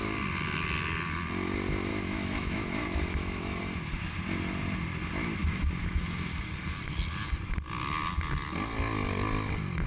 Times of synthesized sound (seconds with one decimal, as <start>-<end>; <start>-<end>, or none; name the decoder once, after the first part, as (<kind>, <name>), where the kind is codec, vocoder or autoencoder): 1.9-3.6 (autoencoder, DAC-VAE); 5.4-6.0